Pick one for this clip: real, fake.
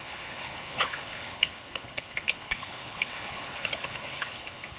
fake